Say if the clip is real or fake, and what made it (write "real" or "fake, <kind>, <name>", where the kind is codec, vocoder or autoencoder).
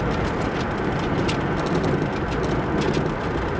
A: real